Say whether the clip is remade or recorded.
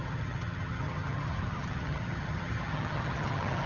remade